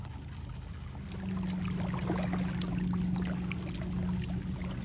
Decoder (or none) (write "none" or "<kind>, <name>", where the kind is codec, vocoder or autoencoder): none